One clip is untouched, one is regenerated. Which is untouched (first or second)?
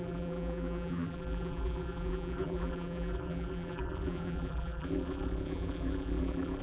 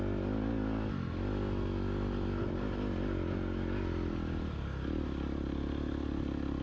second